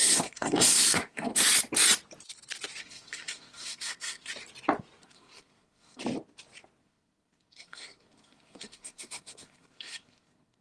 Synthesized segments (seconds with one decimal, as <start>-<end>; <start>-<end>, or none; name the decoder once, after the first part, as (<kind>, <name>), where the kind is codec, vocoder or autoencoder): 0.0-1.3 (codec, SNAC); 2.8-4.3; 5.0-6.0; 6.8-10.6